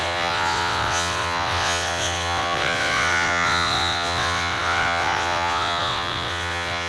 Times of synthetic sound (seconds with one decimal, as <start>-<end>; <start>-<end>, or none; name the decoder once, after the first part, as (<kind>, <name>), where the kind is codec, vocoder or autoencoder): 0.0-6.9 (vocoder, WaveNeXt)